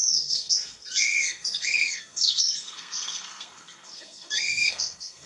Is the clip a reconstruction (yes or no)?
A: yes